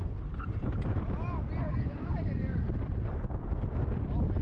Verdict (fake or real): real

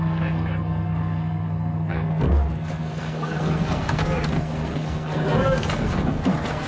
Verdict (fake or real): fake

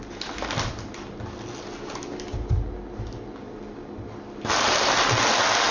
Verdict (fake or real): real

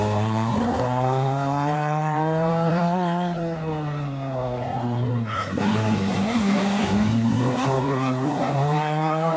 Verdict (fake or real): fake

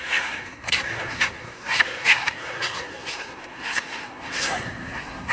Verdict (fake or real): fake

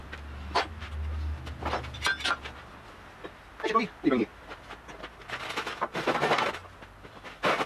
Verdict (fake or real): real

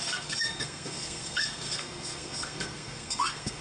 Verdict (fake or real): fake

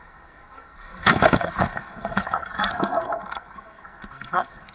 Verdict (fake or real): fake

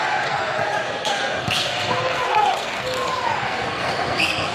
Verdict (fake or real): fake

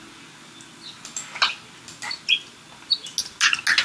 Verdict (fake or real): real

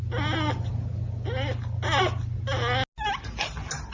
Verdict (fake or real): real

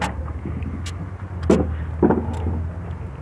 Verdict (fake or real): real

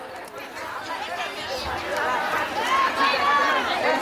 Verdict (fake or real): real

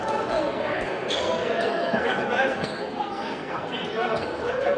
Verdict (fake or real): fake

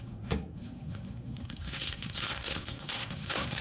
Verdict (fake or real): fake